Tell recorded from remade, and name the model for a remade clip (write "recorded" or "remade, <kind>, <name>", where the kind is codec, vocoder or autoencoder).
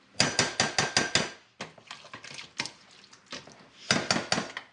recorded